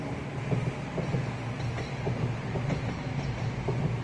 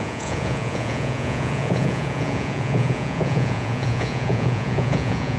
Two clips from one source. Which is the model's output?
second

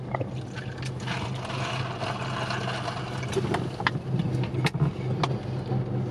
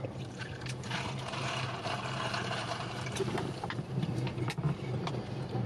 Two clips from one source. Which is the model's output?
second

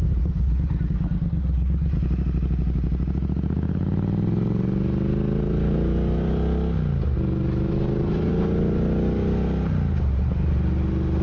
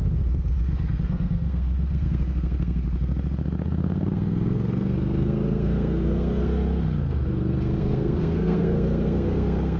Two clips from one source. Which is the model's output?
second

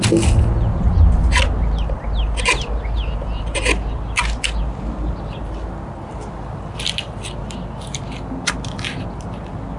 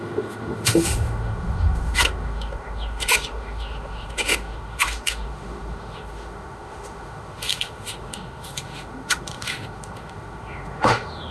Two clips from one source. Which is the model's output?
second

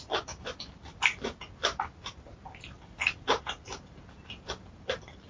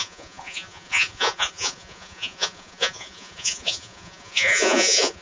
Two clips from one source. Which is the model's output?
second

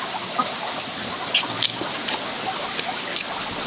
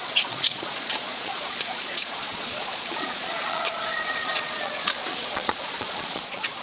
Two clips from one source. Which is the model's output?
second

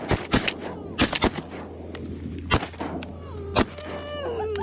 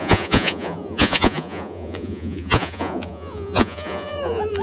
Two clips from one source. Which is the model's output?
second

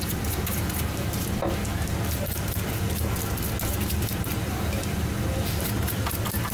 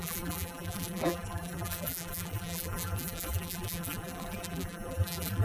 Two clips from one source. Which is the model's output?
second